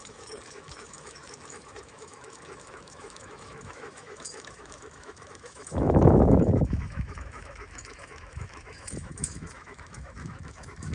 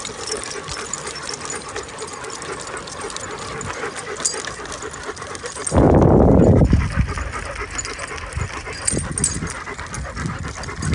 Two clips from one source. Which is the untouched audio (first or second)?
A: second